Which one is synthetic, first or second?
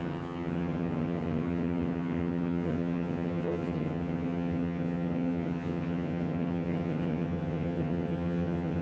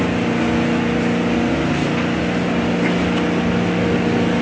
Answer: first